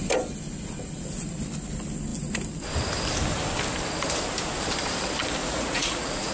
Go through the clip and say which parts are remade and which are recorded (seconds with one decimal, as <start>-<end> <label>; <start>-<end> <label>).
0.0-5.4 recorded; 5.4-6.3 remade